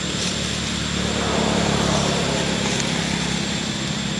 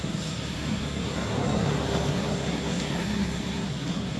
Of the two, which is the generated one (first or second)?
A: second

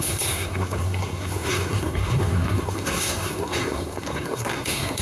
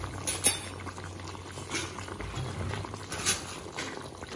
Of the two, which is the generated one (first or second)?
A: first